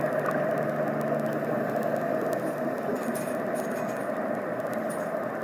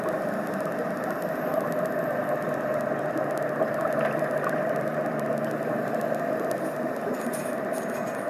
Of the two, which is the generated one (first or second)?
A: second